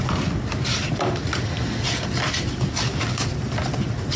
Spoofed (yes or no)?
no